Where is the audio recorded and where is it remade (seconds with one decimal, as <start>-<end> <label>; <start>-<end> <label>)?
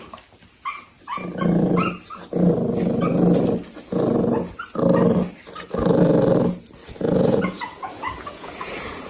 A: 0.0-6.8 recorded; 6.8-9.1 remade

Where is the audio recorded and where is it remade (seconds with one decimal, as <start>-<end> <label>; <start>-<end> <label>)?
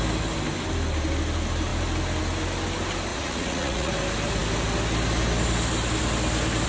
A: 0.0-3.1 recorded; 3.1-3.9 remade; 3.9-6.7 recorded